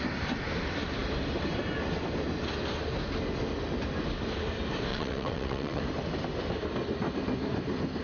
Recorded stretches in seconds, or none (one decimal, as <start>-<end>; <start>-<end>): 0.0-4.9; 5.8-8.0